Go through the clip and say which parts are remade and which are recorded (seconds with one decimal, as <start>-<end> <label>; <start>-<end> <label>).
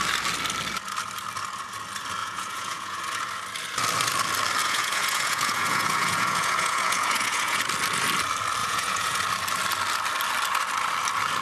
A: 0.0-2.2 recorded; 2.2-3.0 remade; 3.0-4.6 recorded; 4.6-7.6 remade; 7.6-8.6 recorded; 8.6-9.2 remade; 9.2-11.4 recorded